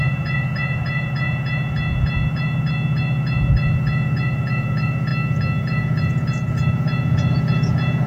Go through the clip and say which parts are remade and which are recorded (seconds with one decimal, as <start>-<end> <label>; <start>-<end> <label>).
0.0-5.1 remade; 5.1-5.6 recorded; 5.6-8.1 remade